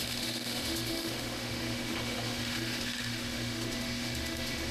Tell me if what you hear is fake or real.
fake